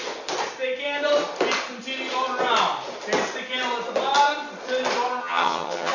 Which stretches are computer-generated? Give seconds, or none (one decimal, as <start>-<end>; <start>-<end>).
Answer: 5.2-5.9